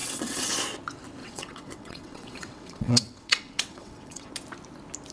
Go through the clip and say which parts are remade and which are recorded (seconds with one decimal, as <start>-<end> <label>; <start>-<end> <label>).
0.0-0.5 remade; 0.5-1.2 recorded; 1.2-4.3 remade; 4.3-5.1 recorded